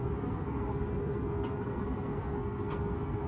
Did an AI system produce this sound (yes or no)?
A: yes